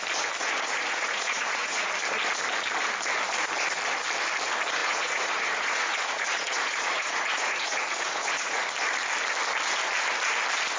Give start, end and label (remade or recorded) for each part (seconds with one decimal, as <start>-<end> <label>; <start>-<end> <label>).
0.0-0.4 recorded; 0.4-1.9 remade; 1.9-4.8 recorded; 4.8-8.6 remade; 8.6-10.8 recorded